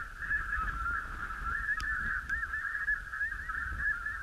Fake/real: real